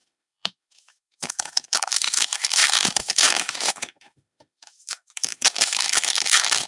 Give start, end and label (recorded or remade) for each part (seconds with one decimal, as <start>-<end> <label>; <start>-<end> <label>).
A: 0.0-6.7 remade